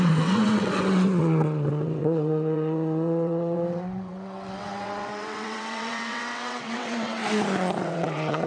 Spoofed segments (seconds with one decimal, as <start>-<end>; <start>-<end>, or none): 0.0-7.2; 7.8-8.5